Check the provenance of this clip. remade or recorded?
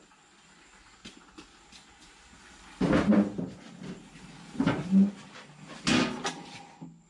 recorded